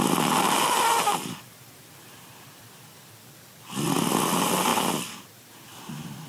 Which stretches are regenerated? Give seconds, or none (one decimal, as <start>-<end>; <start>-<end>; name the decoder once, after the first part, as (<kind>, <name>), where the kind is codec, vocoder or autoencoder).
0.9-2.3 (vocoder, BigVGAN v2); 4.7-5.5